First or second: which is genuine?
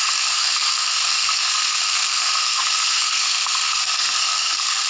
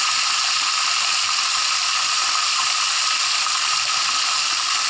second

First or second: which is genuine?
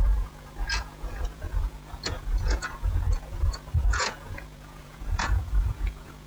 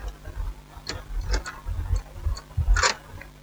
second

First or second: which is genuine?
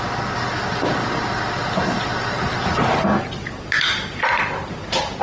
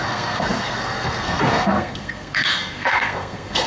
first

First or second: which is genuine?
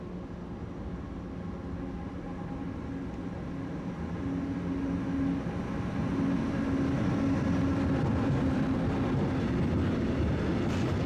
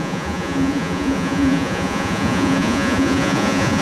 first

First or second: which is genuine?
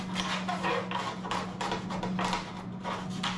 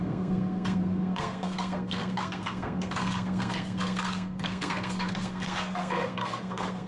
first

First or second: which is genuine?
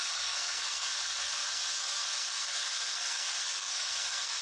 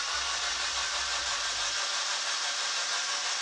second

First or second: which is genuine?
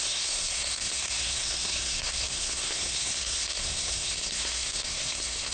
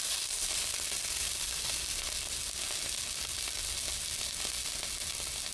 second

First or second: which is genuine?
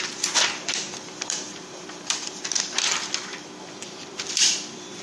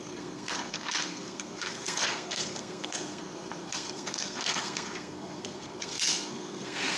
first